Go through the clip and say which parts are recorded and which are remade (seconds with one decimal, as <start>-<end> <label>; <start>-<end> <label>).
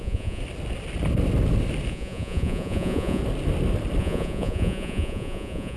0.0-0.4 remade; 0.4-1.9 recorded; 1.9-3.2 remade; 3.2-4.0 recorded; 4.0-5.8 remade